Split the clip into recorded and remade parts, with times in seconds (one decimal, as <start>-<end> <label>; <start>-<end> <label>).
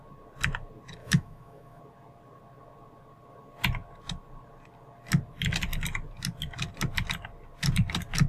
0.0-1.0 recorded; 1.0-1.8 remade; 1.8-8.3 recorded